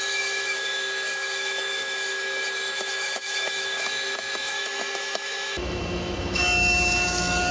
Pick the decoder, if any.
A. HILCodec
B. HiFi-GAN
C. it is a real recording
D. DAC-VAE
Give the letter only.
D